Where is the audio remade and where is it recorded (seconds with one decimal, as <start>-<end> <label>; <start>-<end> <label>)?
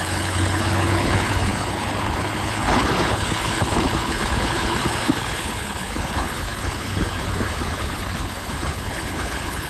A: 0.0-9.7 remade